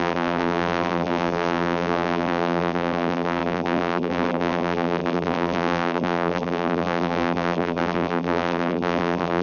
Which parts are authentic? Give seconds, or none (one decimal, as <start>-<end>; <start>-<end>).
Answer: none